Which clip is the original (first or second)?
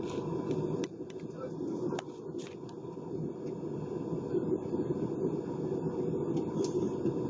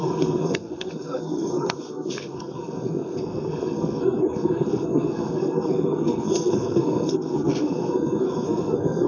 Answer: first